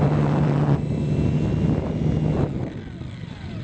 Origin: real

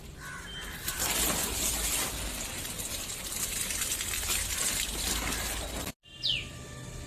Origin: real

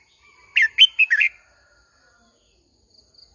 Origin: real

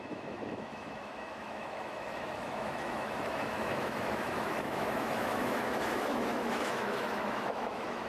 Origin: fake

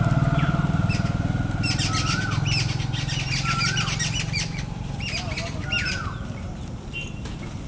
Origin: real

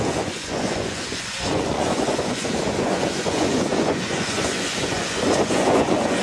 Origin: fake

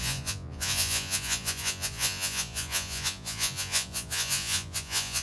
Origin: fake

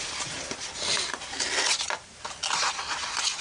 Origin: real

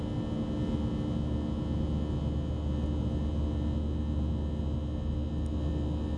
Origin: real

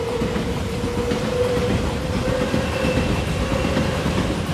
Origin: real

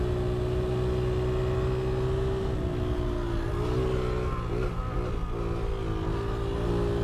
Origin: real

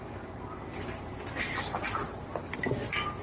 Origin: real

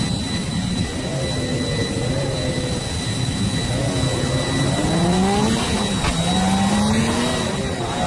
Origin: real